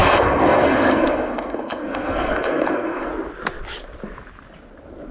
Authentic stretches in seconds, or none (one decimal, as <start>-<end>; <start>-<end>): 3.1-5.1